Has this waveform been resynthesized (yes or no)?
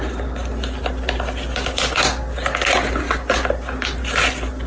no